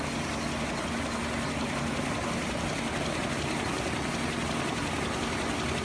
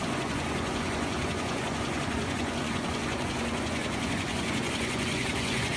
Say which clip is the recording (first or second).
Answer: first